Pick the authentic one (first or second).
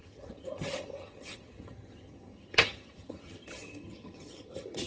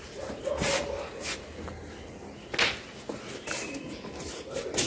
second